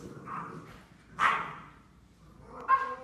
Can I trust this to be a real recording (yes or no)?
yes